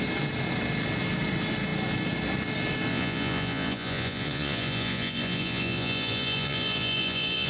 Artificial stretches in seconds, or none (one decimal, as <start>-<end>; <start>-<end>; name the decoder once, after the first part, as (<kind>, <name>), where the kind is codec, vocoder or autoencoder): 2.9-7.5 (vocoder, Vocos)